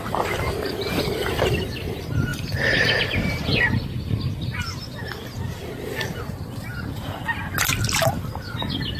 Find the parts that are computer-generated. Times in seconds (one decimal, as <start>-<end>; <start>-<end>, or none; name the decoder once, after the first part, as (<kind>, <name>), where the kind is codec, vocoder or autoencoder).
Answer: none